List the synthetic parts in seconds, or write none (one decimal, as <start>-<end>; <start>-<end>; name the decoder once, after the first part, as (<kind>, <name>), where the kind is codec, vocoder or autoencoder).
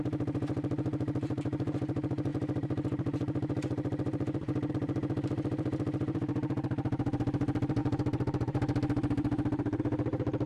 0.0-10.5 (vocoder, BigVGAN v2)